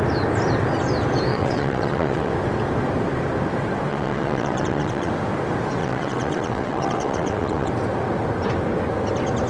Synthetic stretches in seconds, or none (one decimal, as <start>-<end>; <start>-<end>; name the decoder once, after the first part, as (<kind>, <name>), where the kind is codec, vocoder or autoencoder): 1.3-2.3 (vocoder, WaveNeXt); 3.9-5.1; 5.8-7.7